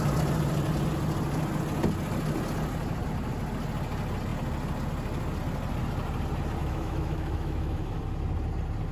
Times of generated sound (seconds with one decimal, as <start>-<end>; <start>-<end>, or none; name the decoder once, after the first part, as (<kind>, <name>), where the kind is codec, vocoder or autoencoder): 6.6-8.0 (autoencoder, DAC-VAE)